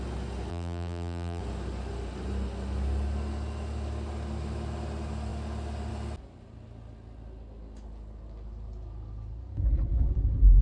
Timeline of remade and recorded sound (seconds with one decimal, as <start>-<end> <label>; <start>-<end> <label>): 0.0-0.5 recorded; 0.5-1.4 remade; 1.4-10.6 recorded